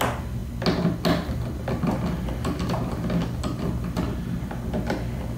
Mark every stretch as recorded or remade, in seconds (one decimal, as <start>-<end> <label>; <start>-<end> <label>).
0.0-5.4 recorded